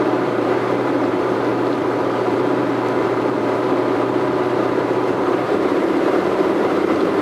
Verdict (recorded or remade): remade